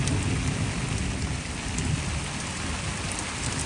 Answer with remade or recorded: recorded